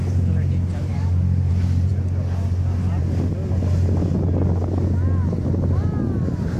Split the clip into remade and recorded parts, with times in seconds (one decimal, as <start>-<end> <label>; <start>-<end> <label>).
0.0-0.9 recorded; 0.9-1.5 remade; 1.5-6.6 recorded